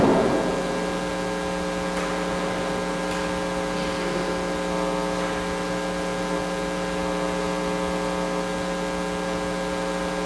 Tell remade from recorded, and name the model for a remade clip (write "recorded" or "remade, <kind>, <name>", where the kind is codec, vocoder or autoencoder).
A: recorded